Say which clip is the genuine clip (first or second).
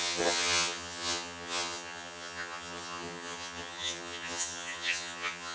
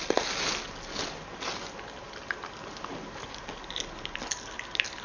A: second